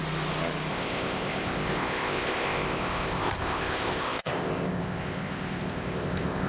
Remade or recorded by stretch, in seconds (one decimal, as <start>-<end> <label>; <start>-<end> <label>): 0.0-0.7 recorded; 0.7-6.5 remade